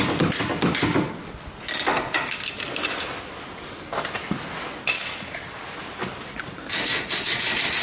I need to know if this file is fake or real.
real